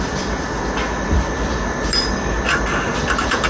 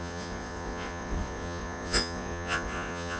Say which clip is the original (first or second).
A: first